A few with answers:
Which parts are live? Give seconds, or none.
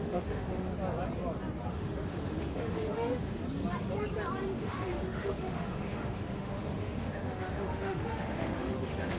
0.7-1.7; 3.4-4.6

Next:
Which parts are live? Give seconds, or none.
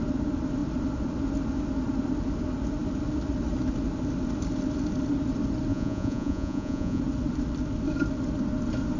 0.0-5.7; 7.0-9.0